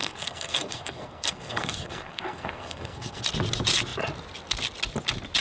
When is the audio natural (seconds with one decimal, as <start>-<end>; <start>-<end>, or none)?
3.2-5.4